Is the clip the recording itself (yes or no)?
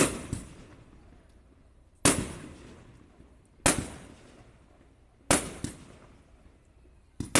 yes